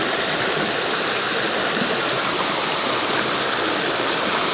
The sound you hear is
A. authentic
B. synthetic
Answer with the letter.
A